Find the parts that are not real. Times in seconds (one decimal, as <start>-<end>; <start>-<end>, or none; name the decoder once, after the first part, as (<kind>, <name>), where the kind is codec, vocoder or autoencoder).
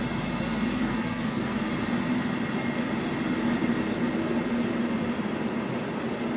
0.8-1.7 (codec, SNAC)